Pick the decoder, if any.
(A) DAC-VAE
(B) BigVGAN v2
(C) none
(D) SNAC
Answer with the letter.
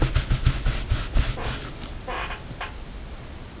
C